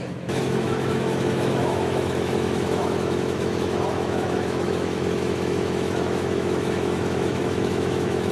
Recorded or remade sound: remade